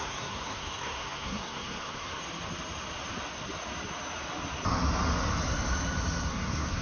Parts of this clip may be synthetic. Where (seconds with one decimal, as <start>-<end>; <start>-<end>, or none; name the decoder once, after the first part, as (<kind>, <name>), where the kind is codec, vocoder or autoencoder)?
0.0-2.2 (codec, SNAC); 6.3-6.8